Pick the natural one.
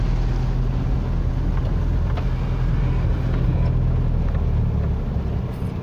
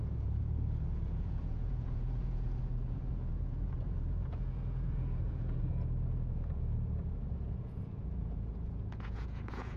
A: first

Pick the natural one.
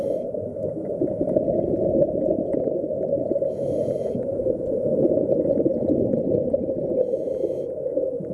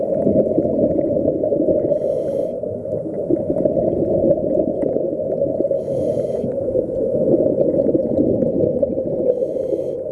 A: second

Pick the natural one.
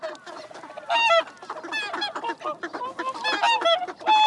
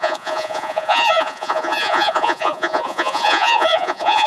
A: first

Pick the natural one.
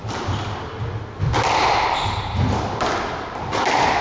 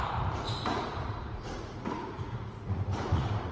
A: first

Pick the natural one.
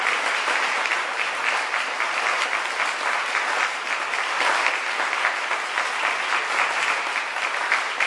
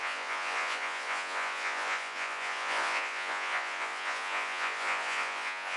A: first